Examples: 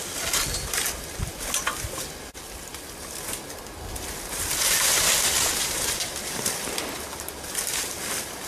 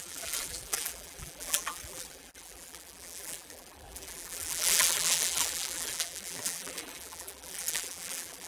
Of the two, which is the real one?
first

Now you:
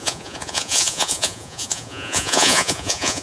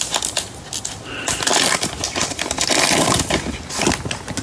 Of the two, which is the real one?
second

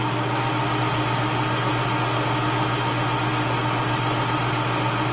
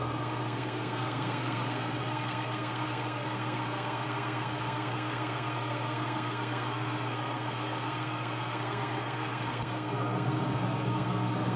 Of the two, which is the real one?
first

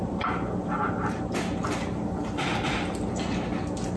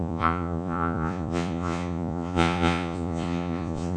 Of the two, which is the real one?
first